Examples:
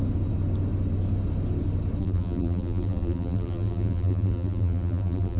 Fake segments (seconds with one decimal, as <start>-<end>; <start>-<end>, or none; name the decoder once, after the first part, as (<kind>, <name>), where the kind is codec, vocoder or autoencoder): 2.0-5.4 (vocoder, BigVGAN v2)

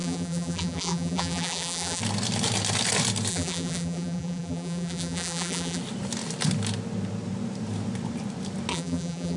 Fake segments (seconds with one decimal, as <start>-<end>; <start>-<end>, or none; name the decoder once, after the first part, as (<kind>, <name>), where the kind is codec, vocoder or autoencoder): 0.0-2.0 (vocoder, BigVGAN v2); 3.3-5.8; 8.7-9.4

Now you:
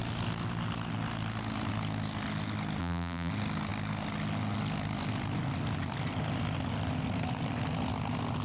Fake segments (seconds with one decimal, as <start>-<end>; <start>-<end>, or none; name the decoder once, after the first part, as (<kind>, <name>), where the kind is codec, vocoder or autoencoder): 2.8-3.3 (vocoder, BigVGAN v2)